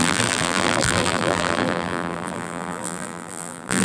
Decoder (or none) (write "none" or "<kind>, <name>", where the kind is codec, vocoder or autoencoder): vocoder, BigVGAN v2